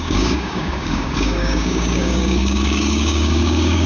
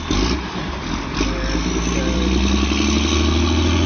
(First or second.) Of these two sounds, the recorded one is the second